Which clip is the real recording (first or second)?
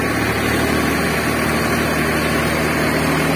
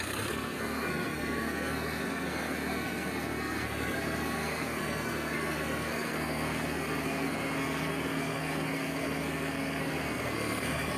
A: first